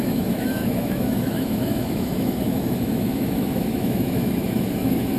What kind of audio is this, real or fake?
fake